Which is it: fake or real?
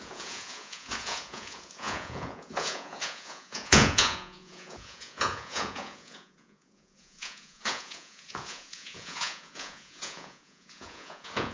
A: fake